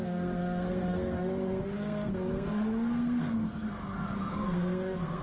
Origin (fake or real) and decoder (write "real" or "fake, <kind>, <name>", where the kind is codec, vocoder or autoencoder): fake, codec, SNAC